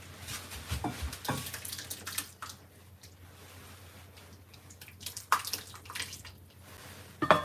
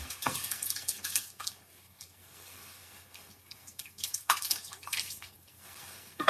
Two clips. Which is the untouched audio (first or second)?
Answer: first